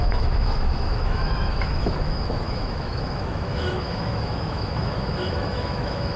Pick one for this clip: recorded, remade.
remade